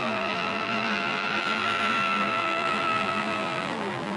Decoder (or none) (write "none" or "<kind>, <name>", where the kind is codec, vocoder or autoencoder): vocoder, BigVGAN v2